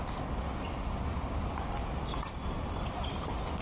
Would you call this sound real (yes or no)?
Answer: yes